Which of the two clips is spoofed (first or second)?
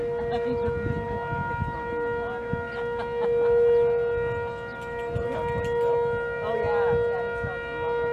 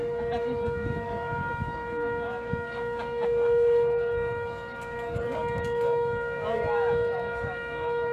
second